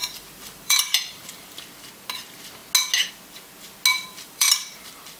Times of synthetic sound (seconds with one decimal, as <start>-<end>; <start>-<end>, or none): 0.0-1.6; 3.9-5.2